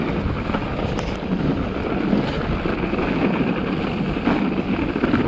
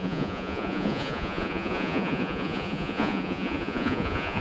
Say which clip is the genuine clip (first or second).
first